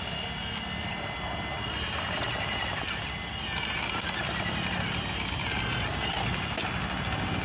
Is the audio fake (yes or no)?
no